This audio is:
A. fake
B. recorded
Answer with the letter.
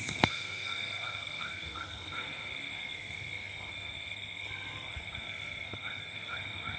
A